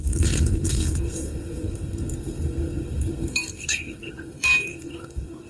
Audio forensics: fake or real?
fake